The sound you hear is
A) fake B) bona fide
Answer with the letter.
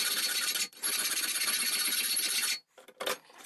B